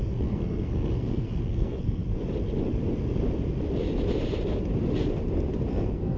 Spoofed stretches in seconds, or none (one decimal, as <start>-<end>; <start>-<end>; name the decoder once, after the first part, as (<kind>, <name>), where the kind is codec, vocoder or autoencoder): 0.0-2.0 (codec, SNAC); 5.7-6.2